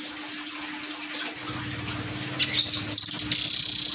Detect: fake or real real